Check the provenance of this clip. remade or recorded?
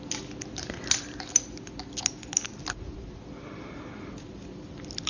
recorded